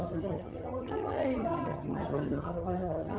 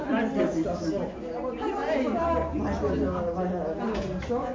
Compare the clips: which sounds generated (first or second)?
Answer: first